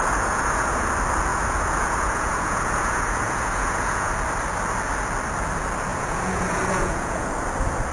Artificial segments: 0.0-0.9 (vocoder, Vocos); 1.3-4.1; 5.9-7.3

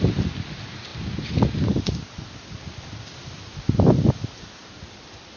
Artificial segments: none

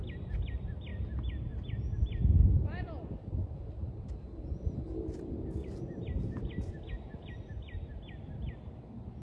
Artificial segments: 5.6-6.8 (vocoder, BigVGAN v2); 7.5-8.0

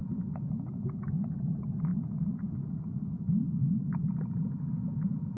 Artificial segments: 0.0-5.4 (vocoder, Vocos)

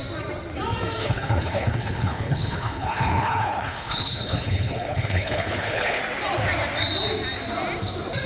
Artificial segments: 1.0-6.0 (codec, HILCodec)

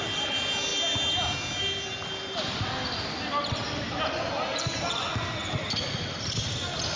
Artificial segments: none

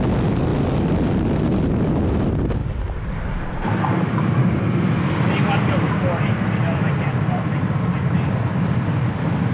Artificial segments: none

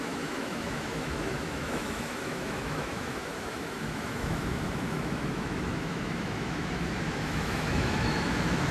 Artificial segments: 0.0-8.7 (autoencoder, DAC-VAE)